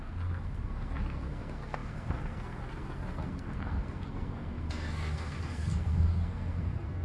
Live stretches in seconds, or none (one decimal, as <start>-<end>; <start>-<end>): none